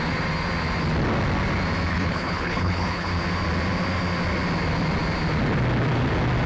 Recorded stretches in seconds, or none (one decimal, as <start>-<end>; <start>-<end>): 0.0-1.9; 3.1-6.5